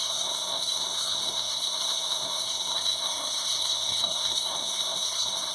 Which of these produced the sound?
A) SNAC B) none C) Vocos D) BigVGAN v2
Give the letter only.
A